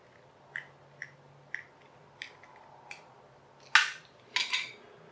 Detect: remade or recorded recorded